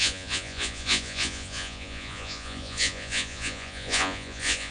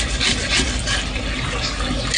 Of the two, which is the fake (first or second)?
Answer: first